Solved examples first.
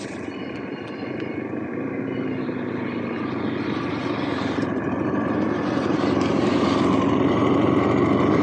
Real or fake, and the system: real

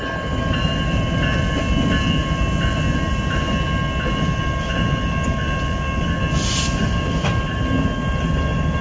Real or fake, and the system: real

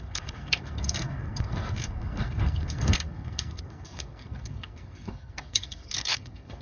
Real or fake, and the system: fake, codec, SNAC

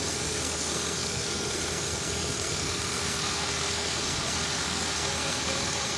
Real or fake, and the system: fake, codec, SNAC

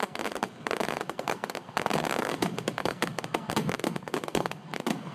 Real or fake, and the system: fake, codec, SNAC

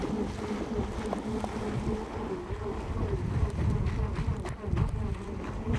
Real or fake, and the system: real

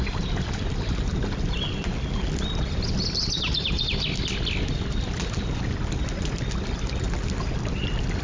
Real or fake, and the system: real